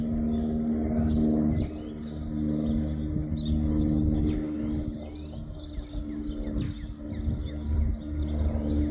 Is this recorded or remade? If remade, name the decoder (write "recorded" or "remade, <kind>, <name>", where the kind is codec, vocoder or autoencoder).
recorded